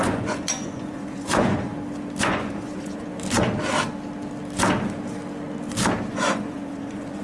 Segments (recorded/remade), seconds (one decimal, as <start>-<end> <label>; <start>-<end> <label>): 0.0-1.7 remade; 1.7-2.2 recorded; 2.2-3.1 remade; 3.1-6.1 recorded; 6.1-7.2 remade